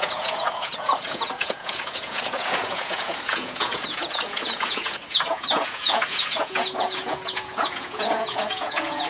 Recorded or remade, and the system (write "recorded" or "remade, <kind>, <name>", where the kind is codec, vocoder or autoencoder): remade, vocoder, Vocos